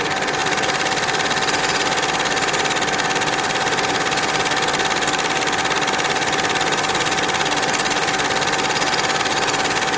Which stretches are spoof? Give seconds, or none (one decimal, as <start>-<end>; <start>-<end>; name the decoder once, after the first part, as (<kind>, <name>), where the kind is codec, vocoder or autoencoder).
none